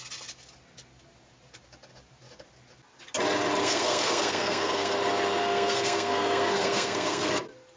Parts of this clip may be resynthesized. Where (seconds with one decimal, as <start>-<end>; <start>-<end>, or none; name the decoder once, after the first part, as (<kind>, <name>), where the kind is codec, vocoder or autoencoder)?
3.6-4.9 (codec, SNAC); 5.4-7.3